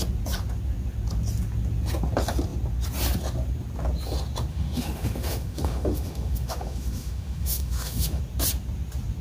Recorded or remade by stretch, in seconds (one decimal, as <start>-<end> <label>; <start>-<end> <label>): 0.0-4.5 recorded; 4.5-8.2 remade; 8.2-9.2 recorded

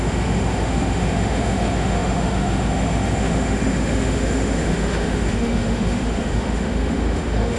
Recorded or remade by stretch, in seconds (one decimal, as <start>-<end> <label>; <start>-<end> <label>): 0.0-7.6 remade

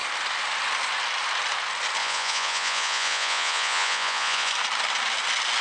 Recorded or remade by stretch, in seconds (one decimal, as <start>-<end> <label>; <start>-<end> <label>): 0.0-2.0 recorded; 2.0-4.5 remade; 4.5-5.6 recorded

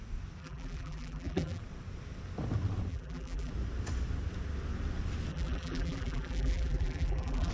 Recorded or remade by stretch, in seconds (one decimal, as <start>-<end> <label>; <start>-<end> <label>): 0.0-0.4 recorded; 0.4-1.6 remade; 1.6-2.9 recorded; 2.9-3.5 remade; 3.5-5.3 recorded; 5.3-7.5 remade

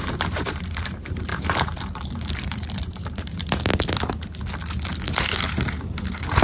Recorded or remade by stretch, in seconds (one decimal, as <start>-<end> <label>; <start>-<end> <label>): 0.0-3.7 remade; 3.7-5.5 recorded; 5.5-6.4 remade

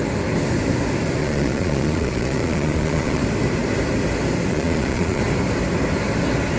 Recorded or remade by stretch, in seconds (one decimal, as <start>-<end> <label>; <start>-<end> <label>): 0.0-1.2 recorded; 1.2-3.2 remade; 3.2-4.5 recorded; 4.5-5.2 remade; 5.2-6.6 recorded

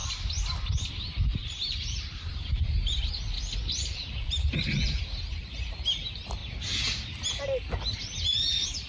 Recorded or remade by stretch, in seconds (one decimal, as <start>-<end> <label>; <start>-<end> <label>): 0.0-1.4 recorded; 1.4-3.1 remade; 3.1-3.8 recorded; 3.8-5.6 remade; 5.6-8.9 recorded